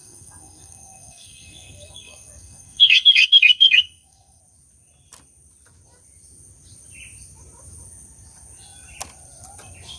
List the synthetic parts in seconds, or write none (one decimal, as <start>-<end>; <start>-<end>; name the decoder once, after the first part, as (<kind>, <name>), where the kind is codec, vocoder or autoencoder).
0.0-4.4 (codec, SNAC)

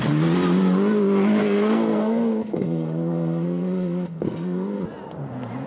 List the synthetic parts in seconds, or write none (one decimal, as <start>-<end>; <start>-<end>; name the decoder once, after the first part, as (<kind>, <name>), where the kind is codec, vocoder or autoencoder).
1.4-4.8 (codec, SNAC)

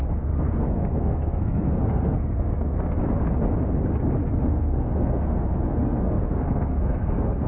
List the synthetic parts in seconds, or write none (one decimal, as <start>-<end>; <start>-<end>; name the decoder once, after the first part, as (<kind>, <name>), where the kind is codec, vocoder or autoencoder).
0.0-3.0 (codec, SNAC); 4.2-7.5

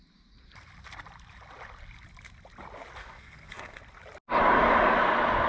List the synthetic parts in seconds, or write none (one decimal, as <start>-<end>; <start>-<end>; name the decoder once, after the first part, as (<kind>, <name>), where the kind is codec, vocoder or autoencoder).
3.0-3.8 (codec, SNAC)